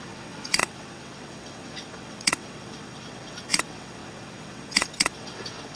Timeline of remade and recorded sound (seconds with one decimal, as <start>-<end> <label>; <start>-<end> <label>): 0.0-5.7 remade